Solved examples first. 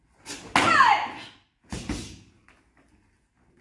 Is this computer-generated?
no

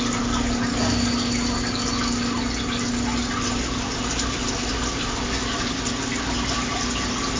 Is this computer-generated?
no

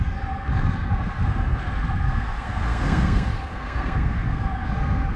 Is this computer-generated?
yes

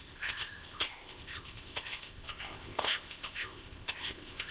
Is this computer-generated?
yes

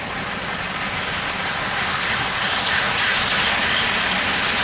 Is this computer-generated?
no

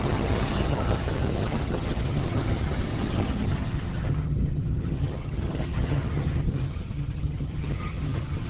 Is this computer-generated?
yes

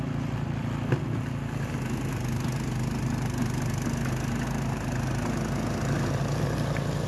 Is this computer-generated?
no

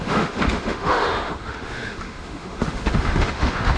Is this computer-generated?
yes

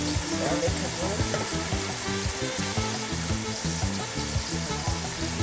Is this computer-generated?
no